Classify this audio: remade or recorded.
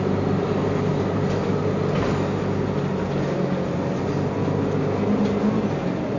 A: recorded